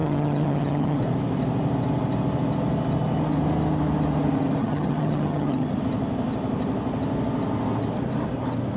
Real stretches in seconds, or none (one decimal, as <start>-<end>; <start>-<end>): 1.0-4.6; 5.7-8.8